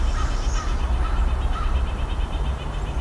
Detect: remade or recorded recorded